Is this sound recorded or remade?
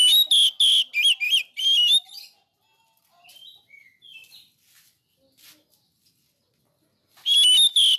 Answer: recorded